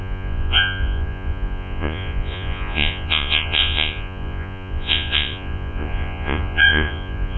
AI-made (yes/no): yes